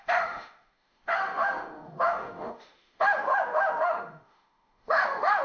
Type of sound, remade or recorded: remade